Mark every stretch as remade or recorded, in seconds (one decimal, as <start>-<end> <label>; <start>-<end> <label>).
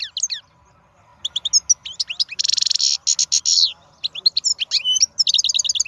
0.0-5.9 recorded